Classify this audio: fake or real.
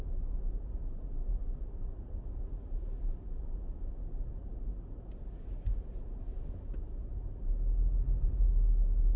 real